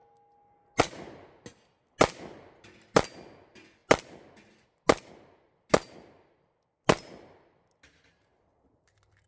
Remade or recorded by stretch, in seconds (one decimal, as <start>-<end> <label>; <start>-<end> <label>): 0.0-9.3 recorded